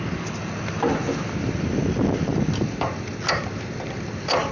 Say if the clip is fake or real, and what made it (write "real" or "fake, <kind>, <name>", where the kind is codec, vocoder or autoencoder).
real